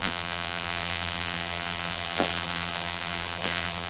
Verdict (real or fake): fake